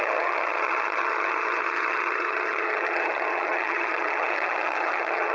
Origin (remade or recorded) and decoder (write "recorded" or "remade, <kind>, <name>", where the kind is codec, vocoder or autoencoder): remade, vocoder, HiFi-GAN